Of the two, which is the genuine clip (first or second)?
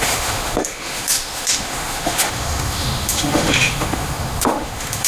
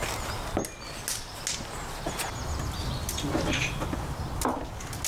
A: second